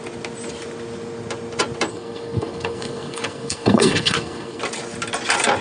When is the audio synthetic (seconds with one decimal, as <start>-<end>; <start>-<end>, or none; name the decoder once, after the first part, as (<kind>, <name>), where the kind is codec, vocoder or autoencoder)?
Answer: 1.9-4.6 (codec, SNAC)